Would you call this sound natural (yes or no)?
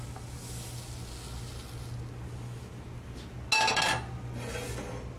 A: yes